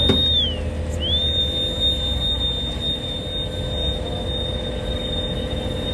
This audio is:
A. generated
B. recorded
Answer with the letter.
B